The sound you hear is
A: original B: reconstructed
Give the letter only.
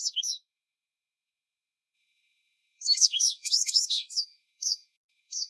B